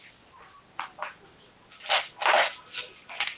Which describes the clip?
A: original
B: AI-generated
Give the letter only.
A